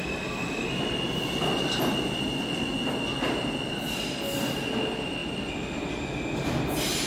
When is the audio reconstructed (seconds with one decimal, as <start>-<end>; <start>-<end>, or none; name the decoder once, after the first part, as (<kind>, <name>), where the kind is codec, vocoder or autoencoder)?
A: none